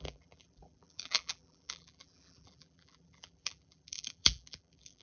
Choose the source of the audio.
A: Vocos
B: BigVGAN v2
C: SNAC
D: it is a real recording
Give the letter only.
B